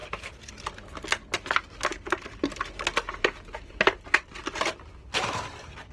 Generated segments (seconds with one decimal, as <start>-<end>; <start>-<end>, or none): 0.0-0.5; 1.9-5.4

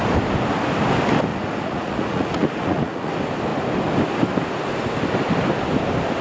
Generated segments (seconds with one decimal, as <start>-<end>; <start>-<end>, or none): 1.3-3.1

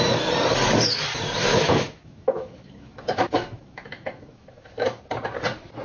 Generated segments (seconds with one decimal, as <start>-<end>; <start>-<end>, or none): 1.5-5.0

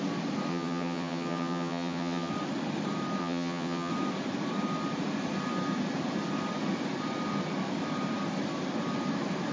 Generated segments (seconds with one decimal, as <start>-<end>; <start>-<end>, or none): 0.5-2.3; 3.2-3.9

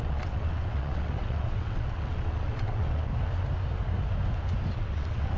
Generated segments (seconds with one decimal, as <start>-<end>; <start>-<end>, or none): 0.0-3.1; 4.7-5.4

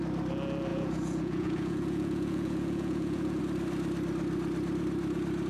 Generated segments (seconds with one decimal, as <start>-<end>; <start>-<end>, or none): 0.7-3.4

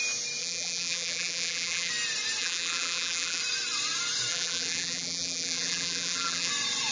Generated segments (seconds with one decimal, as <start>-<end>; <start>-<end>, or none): 0.4-1.9; 2.4-3.4; 4.3-6.5

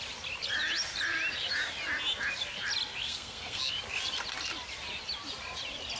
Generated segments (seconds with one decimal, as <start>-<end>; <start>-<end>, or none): 3.0-3.6